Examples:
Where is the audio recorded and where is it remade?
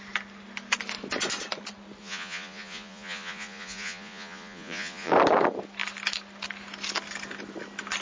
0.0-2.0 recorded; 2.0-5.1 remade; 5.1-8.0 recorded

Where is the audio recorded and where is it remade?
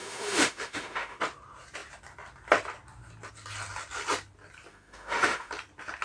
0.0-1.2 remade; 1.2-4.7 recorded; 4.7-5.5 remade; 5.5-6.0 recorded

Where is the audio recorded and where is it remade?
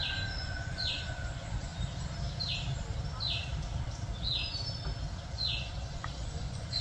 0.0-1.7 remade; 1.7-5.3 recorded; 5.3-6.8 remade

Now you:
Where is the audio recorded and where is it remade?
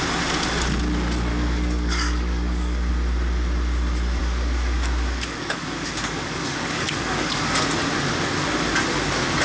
0.0-1.3 recorded; 1.3-2.9 remade; 2.9-4.2 recorded; 4.2-7.6 remade; 7.6-9.4 recorded